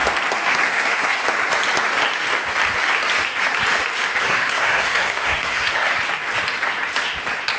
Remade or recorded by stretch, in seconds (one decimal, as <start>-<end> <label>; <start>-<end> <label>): 0.0-0.5 recorded; 0.5-1.2 remade; 1.2-4.2 recorded; 4.2-5.9 remade; 5.9-7.6 recorded